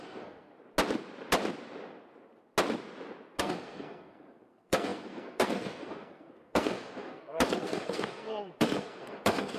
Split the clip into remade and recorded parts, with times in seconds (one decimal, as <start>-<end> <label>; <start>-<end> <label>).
0.0-0.5 remade; 0.5-3.4 recorded; 3.4-9.6 remade